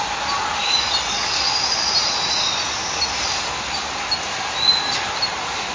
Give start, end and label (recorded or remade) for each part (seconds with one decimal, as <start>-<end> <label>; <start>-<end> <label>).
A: 0.0-5.7 recorded